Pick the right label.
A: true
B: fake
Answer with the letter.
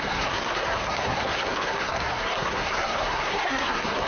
B